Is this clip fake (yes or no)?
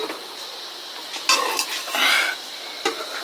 no